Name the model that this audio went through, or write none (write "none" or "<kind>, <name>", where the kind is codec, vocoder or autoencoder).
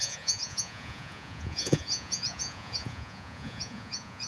vocoder, Vocos